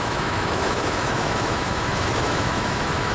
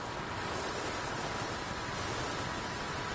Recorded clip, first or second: second